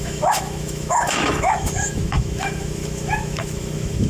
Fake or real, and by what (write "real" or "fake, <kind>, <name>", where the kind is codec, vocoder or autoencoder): fake, autoencoder, DAC-VAE